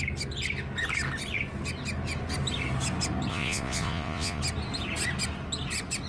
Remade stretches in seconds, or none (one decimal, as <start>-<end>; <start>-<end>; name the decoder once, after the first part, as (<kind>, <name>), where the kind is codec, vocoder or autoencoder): 3.3-4.4 (vocoder, Vocos)